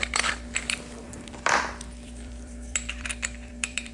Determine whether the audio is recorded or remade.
remade